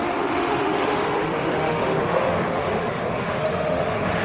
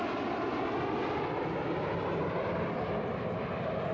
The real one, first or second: second